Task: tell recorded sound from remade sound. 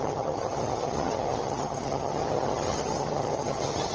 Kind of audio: remade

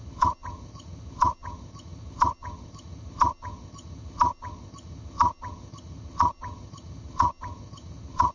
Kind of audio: remade